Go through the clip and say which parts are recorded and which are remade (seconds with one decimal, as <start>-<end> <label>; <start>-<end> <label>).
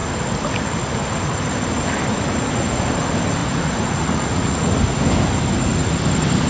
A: 0.0-2.1 recorded; 2.1-2.8 remade; 2.8-3.4 recorded; 3.4-4.7 remade; 4.7-6.5 recorded